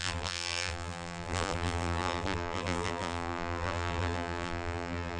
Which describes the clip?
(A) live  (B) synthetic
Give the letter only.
B